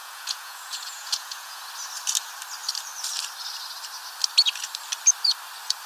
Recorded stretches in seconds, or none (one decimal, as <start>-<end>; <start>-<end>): 1.6-5.9